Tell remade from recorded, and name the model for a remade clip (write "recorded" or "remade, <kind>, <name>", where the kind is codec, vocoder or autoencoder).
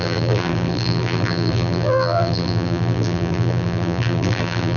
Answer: remade, vocoder, BigVGAN v2